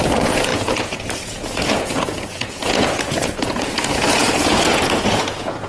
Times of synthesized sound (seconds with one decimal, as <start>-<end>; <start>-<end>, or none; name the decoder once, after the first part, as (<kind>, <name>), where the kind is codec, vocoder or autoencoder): 0.0-5.7 (vocoder, Vocos)